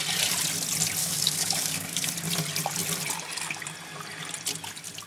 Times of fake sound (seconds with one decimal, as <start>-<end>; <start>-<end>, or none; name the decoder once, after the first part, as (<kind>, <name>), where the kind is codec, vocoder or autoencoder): 1.0-2.1 (codec, DAC)